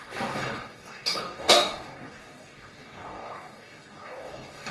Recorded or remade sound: remade